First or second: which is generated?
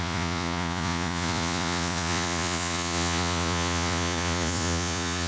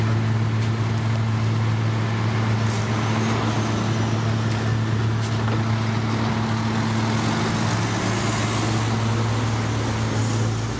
first